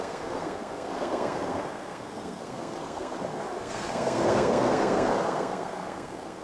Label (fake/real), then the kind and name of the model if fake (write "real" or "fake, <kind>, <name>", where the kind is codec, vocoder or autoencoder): fake, codec, SNAC